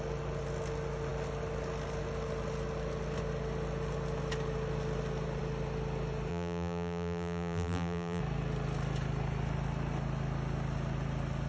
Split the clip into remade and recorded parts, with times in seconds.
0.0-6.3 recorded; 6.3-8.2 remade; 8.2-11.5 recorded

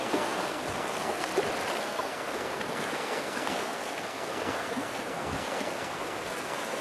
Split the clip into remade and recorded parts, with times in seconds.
0.0-1.3 remade; 1.3-1.8 recorded; 1.8-6.8 remade